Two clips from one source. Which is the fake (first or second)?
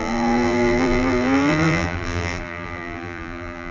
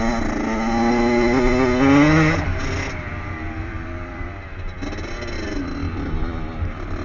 first